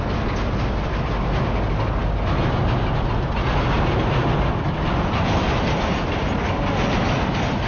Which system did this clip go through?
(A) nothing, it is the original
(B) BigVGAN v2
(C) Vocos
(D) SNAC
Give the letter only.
A